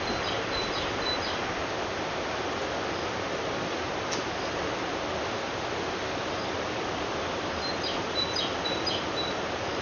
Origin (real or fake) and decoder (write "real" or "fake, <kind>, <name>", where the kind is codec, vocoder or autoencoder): real